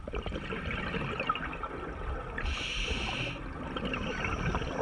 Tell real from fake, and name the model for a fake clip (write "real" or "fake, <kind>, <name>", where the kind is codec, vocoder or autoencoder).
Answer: real